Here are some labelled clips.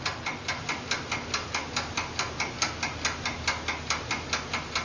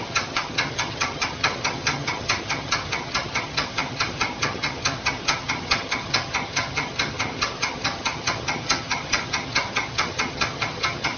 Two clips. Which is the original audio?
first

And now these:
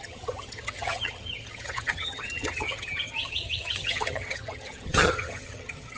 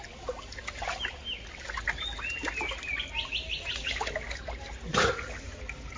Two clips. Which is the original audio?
second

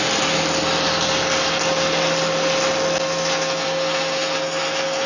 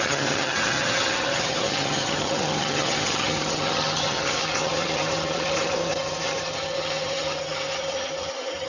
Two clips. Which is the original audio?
first